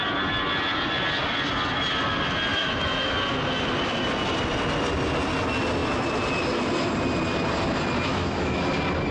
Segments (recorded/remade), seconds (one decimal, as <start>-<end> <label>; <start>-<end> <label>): 0.0-2.5 recorded; 2.5-3.1 remade; 3.1-8.1 recorded; 8.1-8.6 remade; 8.6-9.1 recorded